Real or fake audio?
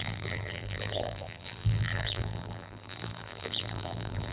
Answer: fake